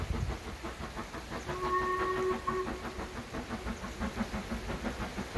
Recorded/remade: recorded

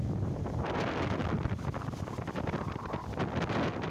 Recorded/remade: recorded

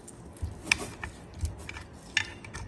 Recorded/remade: recorded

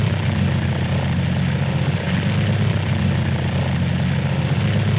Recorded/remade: recorded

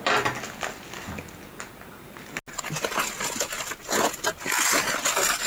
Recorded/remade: recorded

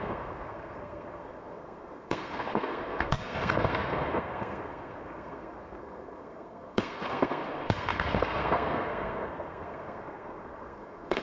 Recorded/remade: remade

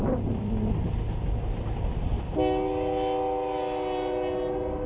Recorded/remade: recorded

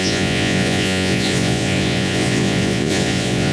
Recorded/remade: remade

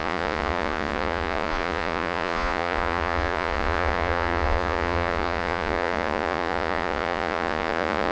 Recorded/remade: remade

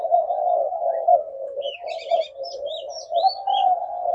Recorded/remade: recorded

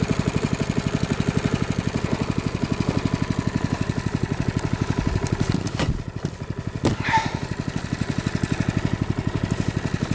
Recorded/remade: recorded